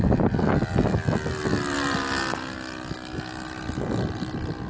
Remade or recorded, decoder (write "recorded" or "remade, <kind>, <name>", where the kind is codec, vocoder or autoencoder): recorded